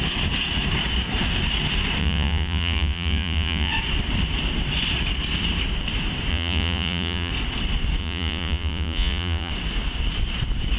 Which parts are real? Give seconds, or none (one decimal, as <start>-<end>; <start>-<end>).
0.0-2.0; 3.7-6.3; 7.3-8.0; 9.5-10.8